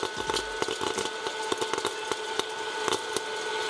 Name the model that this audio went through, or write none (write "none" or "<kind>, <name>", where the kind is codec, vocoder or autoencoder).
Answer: none